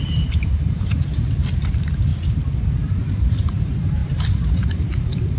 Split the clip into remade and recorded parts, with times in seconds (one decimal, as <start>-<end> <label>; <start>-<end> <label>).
0.0-2.1 remade; 2.1-2.6 recorded; 2.6-5.4 remade

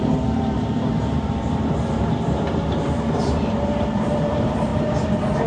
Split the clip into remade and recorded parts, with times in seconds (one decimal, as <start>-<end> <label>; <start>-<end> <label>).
0.0-4.7 remade; 4.7-5.5 recorded

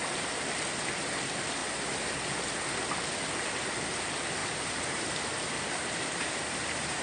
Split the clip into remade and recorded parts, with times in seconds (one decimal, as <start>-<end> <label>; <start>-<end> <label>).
0.0-1.6 recorded; 1.6-2.1 remade; 2.1-4.4 recorded; 4.4-7.0 remade

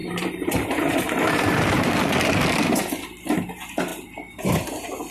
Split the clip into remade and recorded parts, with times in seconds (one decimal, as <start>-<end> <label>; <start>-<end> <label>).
0.0-2.3 remade; 2.3-5.1 recorded